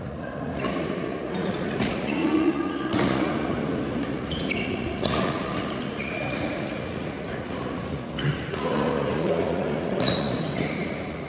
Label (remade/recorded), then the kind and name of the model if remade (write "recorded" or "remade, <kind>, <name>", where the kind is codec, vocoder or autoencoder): remade, vocoder, Vocos